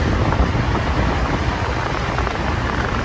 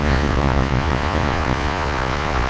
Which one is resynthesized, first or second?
second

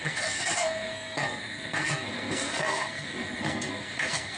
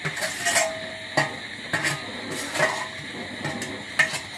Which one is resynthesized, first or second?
first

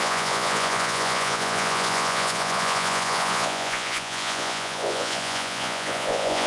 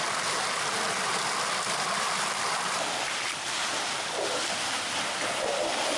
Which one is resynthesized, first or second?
first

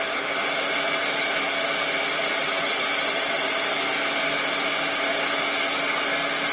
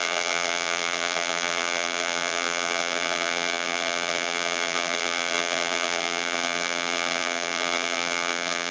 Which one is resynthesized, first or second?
second